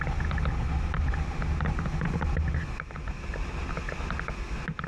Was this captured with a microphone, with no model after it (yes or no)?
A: yes